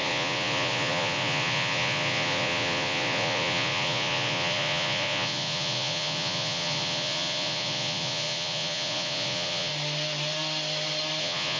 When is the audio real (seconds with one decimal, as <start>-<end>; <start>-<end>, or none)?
9.7-11.2